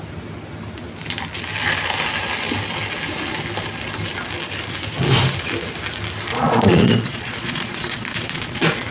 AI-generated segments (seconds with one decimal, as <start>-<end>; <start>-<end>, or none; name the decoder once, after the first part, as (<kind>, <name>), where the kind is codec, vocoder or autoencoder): 6.3-8.9 (vocoder, Vocos)